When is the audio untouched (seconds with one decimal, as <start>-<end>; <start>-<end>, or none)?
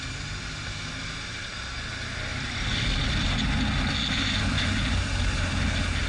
0.0-2.3; 2.9-6.1